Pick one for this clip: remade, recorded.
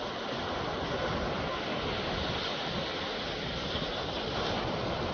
recorded